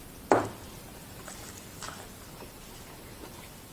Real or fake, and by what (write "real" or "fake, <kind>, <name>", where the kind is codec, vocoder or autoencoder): real